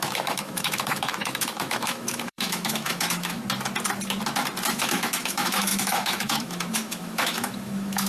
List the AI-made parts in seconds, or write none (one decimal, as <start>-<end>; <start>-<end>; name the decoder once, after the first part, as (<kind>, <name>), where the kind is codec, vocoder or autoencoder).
0.0-3.4 (autoencoder, DAC-VAE); 4.7-8.1